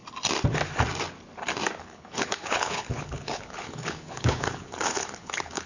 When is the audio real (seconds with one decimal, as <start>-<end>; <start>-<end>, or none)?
0.0-1.8